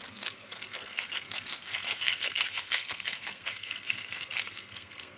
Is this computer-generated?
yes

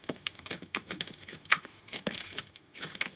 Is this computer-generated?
yes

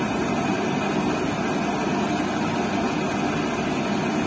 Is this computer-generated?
no